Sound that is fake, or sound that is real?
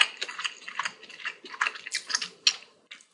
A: real